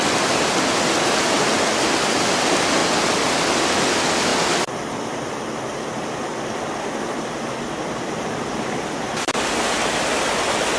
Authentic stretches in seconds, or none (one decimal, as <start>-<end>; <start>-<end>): 0.0-10.8